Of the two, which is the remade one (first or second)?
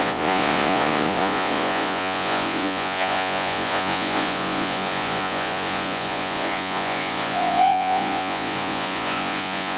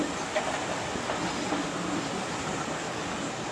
first